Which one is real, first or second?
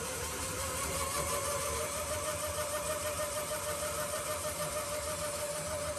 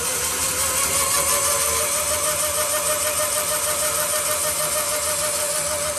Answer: second